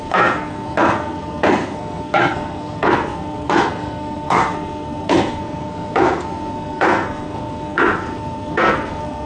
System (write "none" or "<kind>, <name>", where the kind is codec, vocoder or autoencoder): codec, SNAC